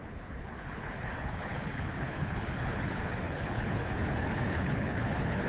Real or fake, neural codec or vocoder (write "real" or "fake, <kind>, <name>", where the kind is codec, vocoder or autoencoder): fake, codec, HILCodec